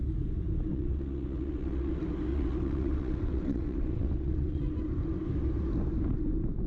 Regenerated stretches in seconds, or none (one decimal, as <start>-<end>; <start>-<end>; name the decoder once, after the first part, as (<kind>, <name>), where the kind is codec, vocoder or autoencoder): 0.7-1.9 (vocoder, WaveNeXt); 2.3-4.7